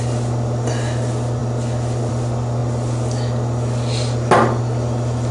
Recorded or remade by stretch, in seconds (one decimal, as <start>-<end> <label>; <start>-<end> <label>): 0.0-5.3 recorded